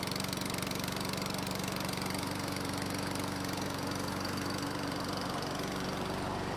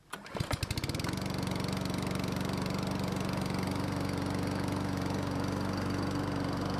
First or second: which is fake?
first